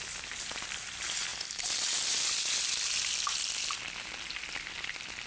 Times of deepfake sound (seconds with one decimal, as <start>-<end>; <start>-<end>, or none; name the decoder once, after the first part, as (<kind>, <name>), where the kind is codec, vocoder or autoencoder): none